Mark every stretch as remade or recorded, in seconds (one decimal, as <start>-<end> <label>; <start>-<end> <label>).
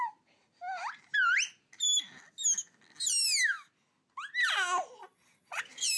0.0-5.0 recorded; 5.0-5.6 remade; 5.6-6.0 recorded